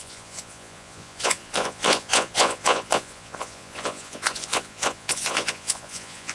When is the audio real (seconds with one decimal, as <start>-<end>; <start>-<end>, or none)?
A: none